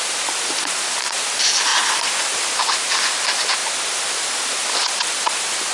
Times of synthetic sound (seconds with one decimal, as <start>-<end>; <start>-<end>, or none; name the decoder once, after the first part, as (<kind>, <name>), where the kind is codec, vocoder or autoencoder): none